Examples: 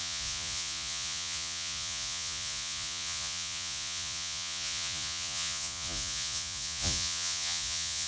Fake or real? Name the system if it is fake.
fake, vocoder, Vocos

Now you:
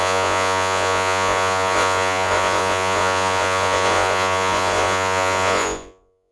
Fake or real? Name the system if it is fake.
fake, vocoder, Vocos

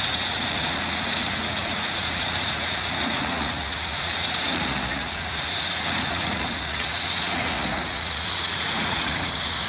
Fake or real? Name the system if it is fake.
fake, vocoder, Vocos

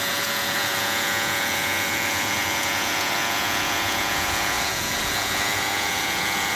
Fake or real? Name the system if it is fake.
fake, vocoder, Vocos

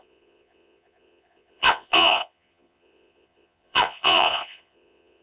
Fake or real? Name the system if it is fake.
fake, vocoder, Vocos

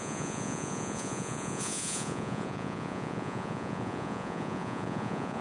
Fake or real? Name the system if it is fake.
fake, vocoder, Vocos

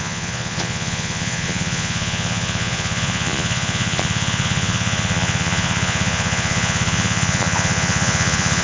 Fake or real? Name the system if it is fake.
fake, vocoder, Vocos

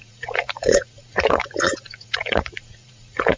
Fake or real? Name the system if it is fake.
fake, vocoder, Vocos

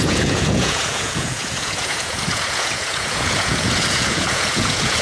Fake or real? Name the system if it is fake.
fake, vocoder, Vocos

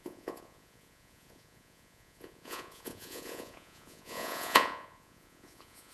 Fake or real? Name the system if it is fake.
fake, vocoder, Vocos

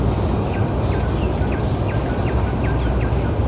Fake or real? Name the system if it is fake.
real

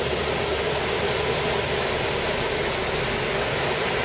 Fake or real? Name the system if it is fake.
real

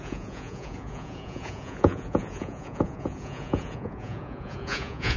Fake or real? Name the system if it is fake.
fake, vocoder, Vocos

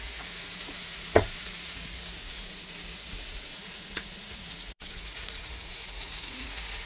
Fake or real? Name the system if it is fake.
fake, vocoder, Vocos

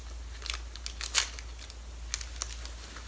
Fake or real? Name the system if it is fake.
real